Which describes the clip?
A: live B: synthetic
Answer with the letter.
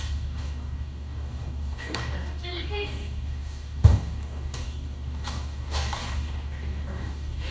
B